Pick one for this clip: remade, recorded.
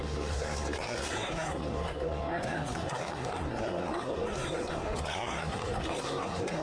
remade